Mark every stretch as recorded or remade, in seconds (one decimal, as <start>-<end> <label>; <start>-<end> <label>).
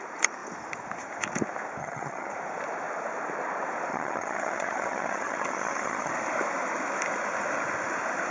0.0-1.8 recorded; 1.8-2.3 remade; 2.3-3.9 recorded; 3.9-6.1 remade; 6.1-8.3 recorded